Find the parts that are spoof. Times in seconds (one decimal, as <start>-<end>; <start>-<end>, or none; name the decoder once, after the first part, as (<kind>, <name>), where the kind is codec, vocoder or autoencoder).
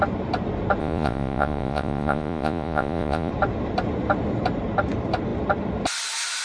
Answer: 0.8-3.3 (vocoder, Vocos)